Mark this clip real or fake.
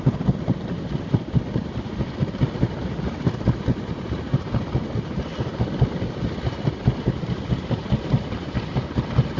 fake